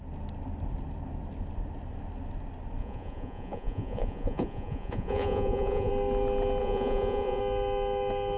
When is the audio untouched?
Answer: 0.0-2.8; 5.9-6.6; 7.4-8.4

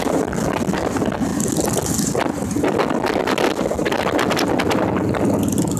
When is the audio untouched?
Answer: 0.0-5.8

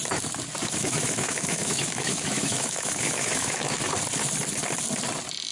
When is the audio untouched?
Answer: 0.0-0.6; 3.9-5.5

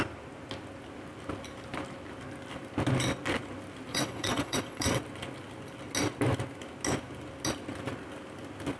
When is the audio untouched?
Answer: 0.0-3.9; 5.0-8.8

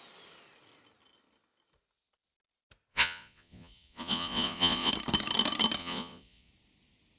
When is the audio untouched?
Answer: 0.0-2.9; 4.9-5.8; 6.5-7.2

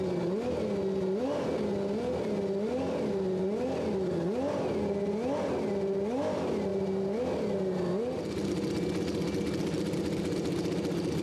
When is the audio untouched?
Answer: 0.0-11.2